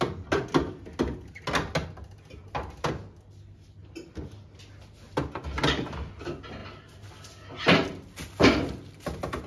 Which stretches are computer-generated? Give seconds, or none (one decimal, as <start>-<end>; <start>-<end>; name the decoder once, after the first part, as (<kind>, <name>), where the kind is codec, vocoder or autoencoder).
none